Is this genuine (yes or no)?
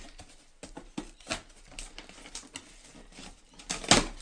yes